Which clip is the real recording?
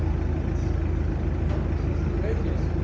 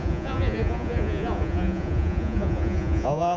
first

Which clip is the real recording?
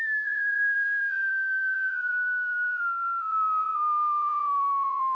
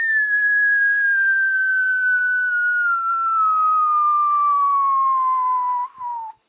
second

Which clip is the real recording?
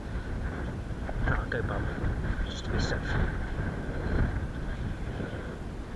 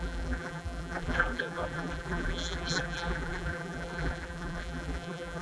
first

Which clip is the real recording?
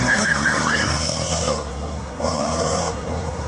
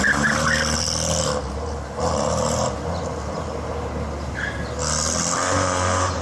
second